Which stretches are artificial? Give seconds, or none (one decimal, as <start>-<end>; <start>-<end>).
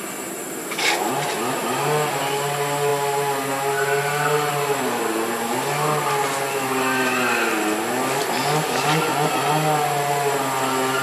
0.6-1.1